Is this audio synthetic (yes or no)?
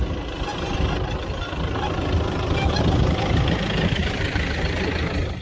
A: no